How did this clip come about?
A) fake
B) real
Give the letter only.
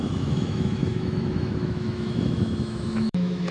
A